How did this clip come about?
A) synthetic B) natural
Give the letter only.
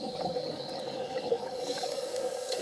A